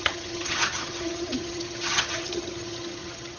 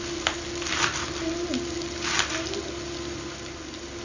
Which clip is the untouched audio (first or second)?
second